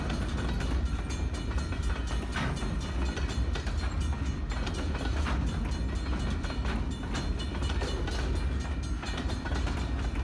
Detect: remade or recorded recorded